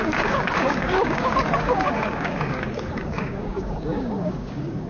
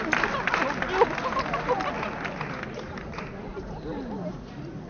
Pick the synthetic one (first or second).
first